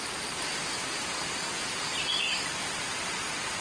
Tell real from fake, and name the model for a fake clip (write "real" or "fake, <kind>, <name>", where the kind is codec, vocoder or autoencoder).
real